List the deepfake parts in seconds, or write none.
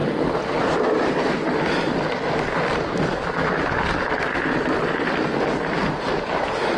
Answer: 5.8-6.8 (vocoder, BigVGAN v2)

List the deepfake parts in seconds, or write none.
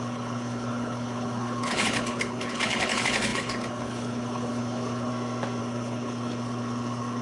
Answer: 0.0-5.1 (codec, HILCodec); 5.6-7.2